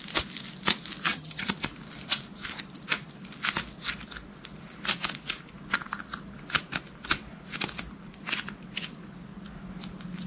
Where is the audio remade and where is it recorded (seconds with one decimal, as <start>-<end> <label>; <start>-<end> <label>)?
0.0-1.1 recorded; 1.1-1.6 remade; 1.6-10.3 recorded